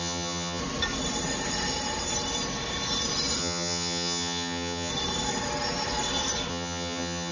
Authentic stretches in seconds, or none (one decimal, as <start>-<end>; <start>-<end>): 0.6-3.4; 4.9-6.5